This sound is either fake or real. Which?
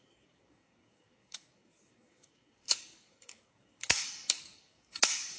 fake